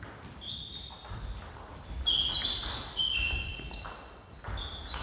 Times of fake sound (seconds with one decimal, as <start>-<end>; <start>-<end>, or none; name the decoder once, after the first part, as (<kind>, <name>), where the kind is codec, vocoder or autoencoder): none